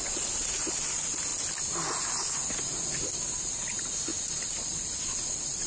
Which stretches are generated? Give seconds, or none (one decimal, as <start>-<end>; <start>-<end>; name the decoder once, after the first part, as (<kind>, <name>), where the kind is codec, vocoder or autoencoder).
0.0-1.3 (vocoder, Vocos); 3.5-4.1; 5.0-5.7